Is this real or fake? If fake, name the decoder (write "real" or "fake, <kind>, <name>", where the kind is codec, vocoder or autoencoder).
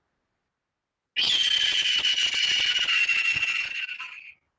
real